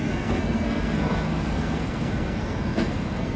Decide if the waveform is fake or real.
fake